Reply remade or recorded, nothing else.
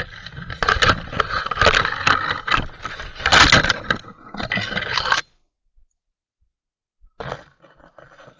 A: recorded